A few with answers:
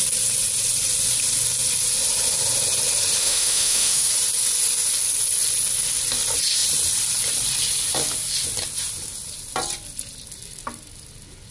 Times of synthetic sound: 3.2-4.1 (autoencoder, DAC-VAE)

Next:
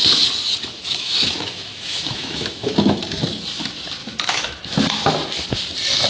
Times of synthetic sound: 0.7-3.0 (autoencoder, DAC-VAE); 4.0-4.9